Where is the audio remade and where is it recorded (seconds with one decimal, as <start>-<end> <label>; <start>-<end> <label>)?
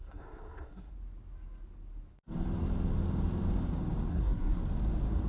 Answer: 0.0-0.9 remade; 0.9-4.1 recorded; 4.1-4.6 remade; 4.6-5.3 recorded